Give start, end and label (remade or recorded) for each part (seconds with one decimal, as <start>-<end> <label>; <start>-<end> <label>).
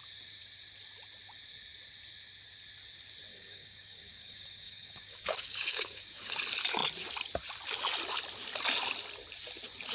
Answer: 0.0-3.3 recorded; 3.3-6.3 remade; 6.3-9.9 recorded